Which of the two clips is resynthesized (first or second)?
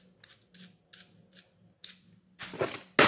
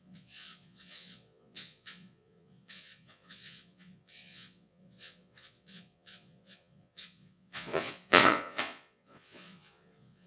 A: second